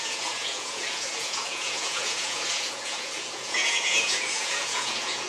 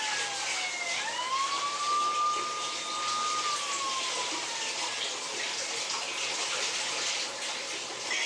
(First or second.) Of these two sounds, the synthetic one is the first